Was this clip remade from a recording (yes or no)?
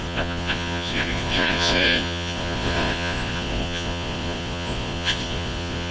yes